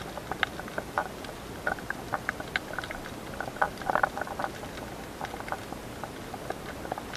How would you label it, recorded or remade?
recorded